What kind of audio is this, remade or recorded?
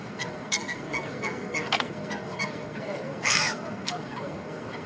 remade